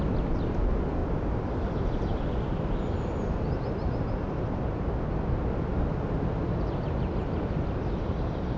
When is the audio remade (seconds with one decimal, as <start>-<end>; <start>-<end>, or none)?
none